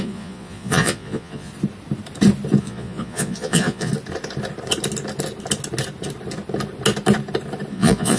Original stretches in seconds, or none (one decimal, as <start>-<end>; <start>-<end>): 1.5-2.6; 3.9-7.7